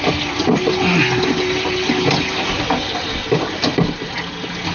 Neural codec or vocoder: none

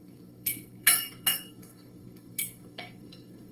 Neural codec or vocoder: codec, SNAC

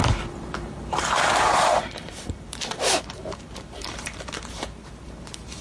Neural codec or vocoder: vocoder, BigVGAN v2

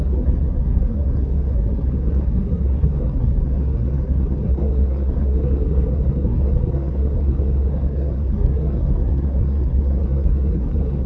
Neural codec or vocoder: codec, SNAC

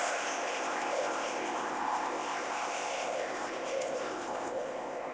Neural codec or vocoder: codec, ZipCodec